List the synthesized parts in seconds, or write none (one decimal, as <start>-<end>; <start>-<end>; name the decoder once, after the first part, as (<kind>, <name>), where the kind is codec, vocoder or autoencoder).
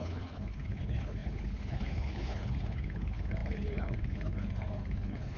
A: 0.0-5.4 (codec, HILCodec)